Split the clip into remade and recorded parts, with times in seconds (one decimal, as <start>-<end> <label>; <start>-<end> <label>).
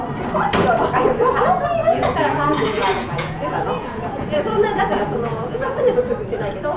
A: 0.0-1.8 recorded; 1.8-5.9 remade; 5.9-6.8 recorded